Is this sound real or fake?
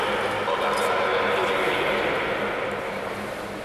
real